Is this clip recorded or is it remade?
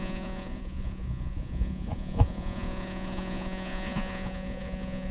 remade